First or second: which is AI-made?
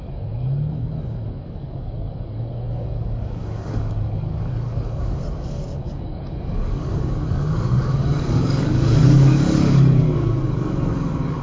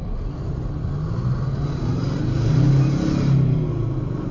first